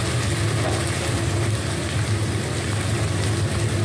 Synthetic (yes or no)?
no